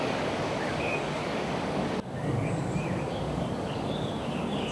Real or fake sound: fake